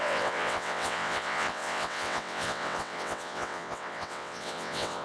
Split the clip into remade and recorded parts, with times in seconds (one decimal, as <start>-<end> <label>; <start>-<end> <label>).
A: 0.0-5.0 remade